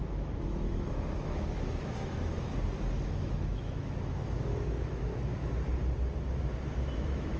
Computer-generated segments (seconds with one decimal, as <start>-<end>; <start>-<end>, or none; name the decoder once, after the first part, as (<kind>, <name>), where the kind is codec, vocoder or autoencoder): 0.0-2.5 (autoencoder, DAC-VAE); 3.1-5.4; 7.0-7.4